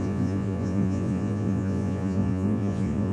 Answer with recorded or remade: remade